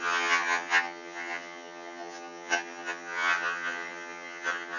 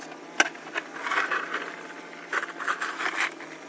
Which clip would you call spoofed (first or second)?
first